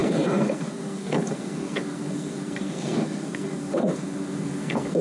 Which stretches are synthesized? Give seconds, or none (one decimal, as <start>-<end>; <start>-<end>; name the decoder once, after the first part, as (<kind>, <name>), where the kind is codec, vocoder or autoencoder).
0.0-5.0 (codec, SNAC)